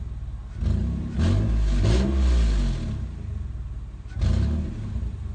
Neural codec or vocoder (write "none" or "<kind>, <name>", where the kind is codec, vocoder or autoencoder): none